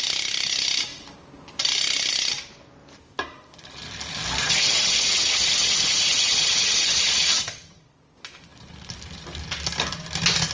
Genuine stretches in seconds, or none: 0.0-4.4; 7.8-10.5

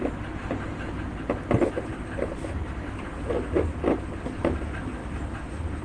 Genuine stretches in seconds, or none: 0.0-5.8

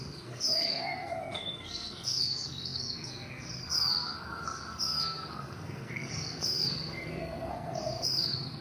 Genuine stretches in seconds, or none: none

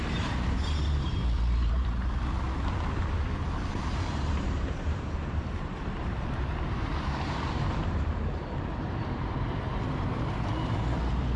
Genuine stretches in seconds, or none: 2.5-3.7

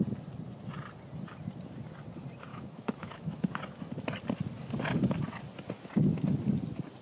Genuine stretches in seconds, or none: 0.0-2.5; 3.5-7.0

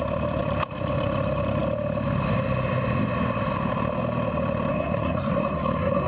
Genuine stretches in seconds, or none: 0.0-4.7

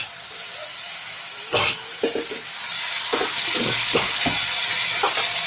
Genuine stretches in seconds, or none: 0.0-0.7; 2.0-5.5